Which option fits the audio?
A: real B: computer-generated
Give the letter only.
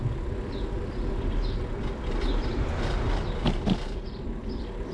A